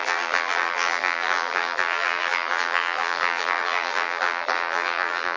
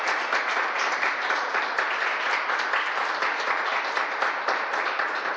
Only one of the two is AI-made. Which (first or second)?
first